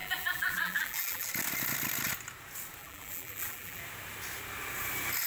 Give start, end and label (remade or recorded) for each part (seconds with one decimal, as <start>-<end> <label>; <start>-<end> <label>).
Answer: 0.0-1.3 remade; 1.3-2.8 recorded; 2.8-3.8 remade; 3.8-5.3 recorded